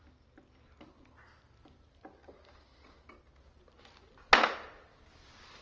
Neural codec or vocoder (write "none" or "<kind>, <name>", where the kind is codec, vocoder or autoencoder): none